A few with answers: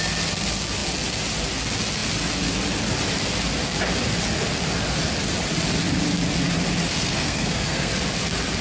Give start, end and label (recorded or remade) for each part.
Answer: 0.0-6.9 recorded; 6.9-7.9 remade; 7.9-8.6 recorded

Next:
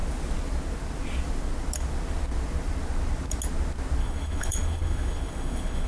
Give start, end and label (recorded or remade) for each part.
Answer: 0.0-4.0 recorded; 4.0-5.9 remade

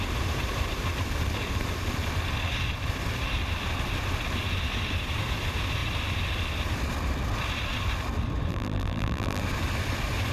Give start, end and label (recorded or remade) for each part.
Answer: 0.0-8.5 recorded; 8.5-9.4 remade; 9.4-10.3 recorded